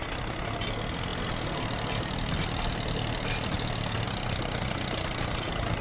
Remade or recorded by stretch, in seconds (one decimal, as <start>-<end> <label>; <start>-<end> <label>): 0.0-5.8 recorded